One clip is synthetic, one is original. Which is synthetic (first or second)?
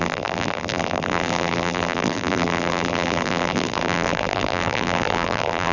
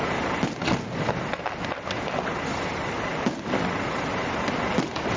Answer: first